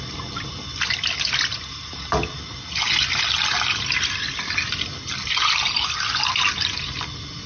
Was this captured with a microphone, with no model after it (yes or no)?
yes